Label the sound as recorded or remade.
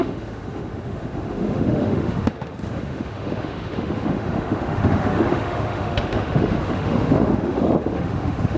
remade